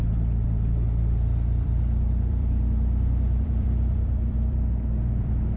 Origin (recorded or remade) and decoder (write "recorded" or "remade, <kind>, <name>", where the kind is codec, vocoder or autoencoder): remade, vocoder, BigVGAN v2